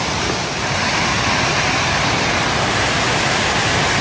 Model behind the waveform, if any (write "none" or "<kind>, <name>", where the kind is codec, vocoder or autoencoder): none